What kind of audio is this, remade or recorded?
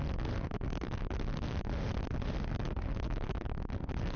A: remade